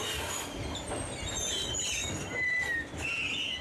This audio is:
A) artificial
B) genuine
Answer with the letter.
B